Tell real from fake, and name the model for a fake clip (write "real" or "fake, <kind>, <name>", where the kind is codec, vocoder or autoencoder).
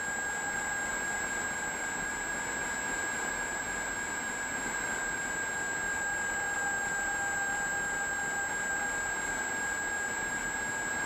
real